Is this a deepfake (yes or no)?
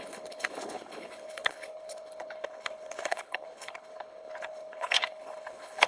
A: yes